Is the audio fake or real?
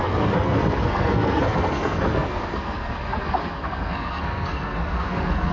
fake